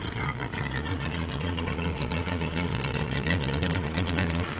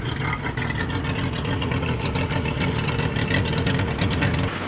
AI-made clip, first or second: first